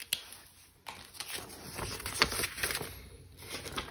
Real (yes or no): yes